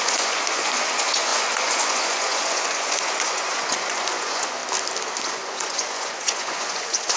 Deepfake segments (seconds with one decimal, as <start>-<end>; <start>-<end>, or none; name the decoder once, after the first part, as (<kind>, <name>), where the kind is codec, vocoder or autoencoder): 0.0-4.6 (vocoder, Vocos); 5.3-7.2